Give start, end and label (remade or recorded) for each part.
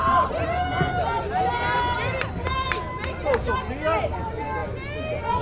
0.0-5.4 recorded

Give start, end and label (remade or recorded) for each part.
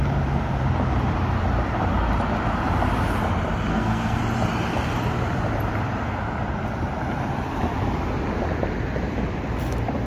0.0-3.7 recorded; 3.7-4.2 remade; 4.2-10.1 recorded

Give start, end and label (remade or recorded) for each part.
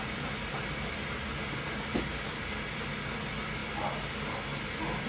0.0-3.6 recorded; 3.6-5.1 remade